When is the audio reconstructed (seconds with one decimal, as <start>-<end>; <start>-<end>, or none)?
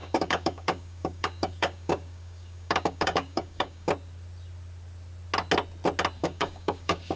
0.0-3.9; 6.2-7.2